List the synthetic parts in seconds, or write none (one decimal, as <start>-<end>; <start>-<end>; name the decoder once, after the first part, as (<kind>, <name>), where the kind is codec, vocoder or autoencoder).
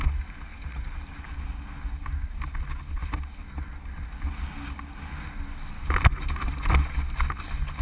0.5-1.2 (vocoder, BigVGAN v2)